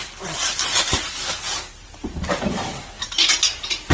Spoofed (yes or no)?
no